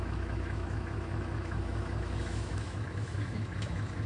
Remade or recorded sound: remade